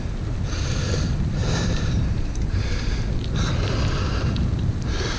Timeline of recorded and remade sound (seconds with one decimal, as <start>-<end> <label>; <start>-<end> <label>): 0.0-1.4 recorded; 1.4-3.2 remade; 3.2-5.2 recorded

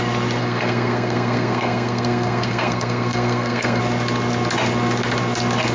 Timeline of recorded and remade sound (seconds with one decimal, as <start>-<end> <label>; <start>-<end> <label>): 0.0-0.4 recorded; 0.4-3.8 remade; 3.8-5.7 recorded